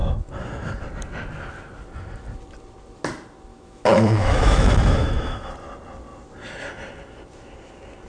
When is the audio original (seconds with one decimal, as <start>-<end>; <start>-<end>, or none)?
0.0-3.5; 5.5-8.1